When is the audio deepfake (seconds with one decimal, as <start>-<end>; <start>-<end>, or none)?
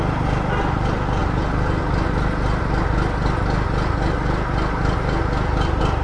none